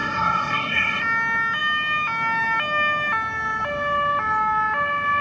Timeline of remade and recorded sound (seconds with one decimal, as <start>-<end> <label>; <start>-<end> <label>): 0.0-1.0 remade; 1.0-5.2 recorded